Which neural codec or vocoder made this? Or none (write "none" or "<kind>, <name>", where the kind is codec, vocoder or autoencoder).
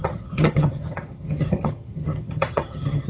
vocoder, HiFi-GAN